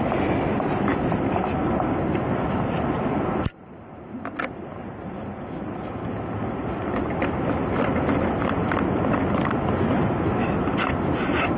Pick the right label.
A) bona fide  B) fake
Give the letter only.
A